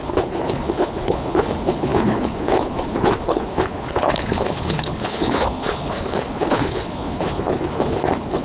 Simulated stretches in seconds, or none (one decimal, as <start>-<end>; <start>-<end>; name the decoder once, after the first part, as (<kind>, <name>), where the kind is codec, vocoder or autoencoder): 0.0-8.4 (codec, HILCodec)